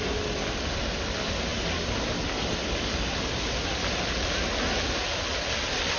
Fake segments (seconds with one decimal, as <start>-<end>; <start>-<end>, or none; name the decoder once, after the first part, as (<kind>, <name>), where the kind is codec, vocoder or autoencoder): none